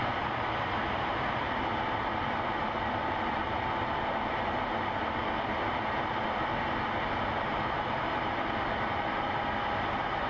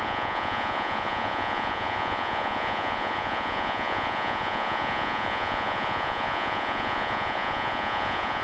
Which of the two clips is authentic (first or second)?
first